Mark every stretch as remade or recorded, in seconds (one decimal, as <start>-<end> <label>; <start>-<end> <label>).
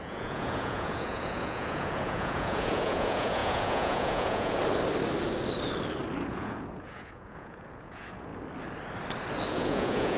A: 0.0-4.6 remade; 4.6-6.3 recorded; 6.3-8.3 remade; 8.3-9.5 recorded; 9.5-10.2 remade